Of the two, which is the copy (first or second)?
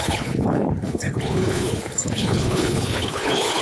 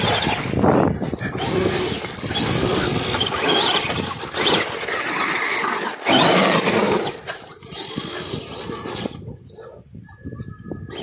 first